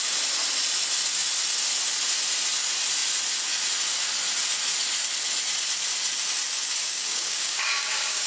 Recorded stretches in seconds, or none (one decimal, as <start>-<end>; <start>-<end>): 0.0-6.8